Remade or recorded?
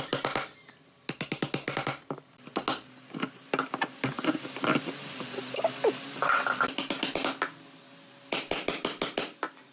recorded